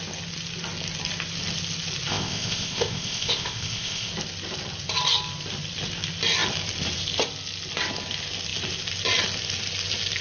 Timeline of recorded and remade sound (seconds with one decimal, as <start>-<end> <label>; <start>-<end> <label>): 0.0-2.1 recorded; 2.1-4.1 remade; 4.1-10.2 recorded